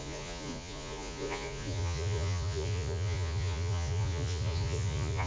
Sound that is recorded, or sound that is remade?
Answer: remade